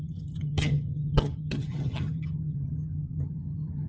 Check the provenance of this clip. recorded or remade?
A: remade